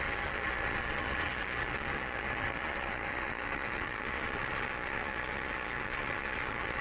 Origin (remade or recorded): remade